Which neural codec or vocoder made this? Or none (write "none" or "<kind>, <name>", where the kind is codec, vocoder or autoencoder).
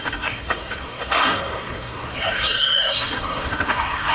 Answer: codec, SNAC